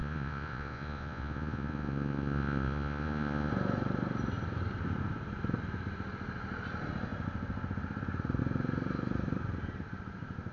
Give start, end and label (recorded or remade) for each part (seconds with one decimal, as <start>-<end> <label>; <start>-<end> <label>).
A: 0.0-3.5 remade; 3.5-10.5 recorded

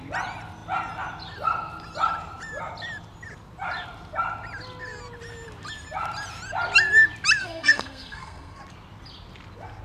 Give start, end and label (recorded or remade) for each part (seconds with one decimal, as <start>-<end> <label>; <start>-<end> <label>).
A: 0.0-7.4 recorded; 7.4-8.6 remade; 8.6-9.8 recorded